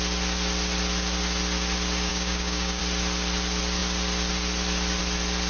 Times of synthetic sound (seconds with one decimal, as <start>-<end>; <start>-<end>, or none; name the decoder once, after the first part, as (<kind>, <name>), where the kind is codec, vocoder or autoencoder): 2.1-2.8 (codec, DAC)